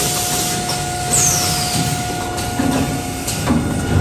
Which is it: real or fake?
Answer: real